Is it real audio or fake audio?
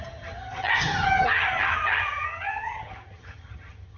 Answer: fake